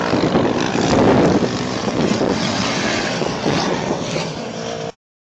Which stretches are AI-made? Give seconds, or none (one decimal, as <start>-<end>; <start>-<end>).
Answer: 1.8-4.5